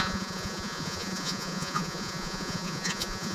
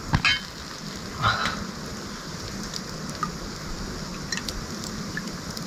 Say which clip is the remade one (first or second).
first